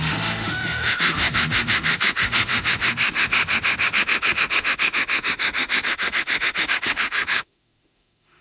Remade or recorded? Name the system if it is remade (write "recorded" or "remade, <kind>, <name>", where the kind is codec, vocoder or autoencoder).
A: remade, autoencoder, DAC-VAE